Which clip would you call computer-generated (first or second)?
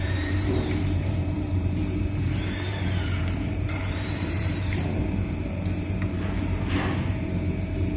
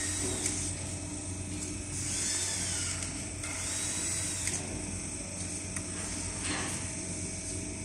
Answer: first